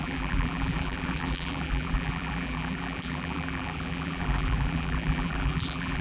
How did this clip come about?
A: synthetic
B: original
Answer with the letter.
A